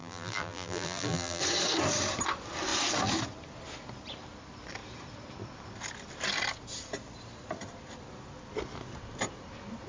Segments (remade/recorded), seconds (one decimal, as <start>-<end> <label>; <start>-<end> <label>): 0.0-1.4 remade; 1.4-9.9 recorded